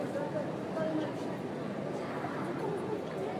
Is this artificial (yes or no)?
no